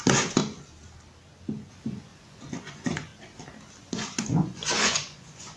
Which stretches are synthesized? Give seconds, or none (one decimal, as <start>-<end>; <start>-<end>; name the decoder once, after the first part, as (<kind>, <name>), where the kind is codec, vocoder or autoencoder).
0.0-0.4 (vocoder, Vocos); 1.7-3.1; 3.8-5.6